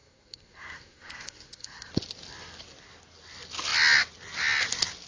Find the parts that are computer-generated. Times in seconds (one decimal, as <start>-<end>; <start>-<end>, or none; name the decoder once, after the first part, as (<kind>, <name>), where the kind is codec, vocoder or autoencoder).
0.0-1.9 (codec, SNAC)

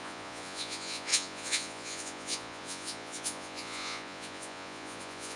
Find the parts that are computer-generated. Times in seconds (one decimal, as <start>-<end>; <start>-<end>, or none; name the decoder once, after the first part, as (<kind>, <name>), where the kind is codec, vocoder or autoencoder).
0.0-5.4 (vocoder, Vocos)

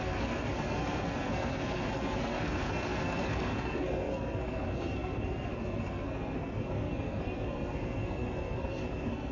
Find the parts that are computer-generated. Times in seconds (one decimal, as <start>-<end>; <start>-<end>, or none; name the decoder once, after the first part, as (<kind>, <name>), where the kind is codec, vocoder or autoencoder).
0.0-9.3 (codec, SNAC)